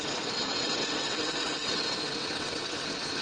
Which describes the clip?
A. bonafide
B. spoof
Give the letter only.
B